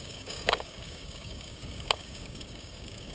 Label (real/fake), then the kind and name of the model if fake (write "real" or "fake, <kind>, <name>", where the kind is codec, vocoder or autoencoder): fake, codec, DAC